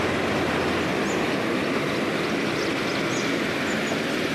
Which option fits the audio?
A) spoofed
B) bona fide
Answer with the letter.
B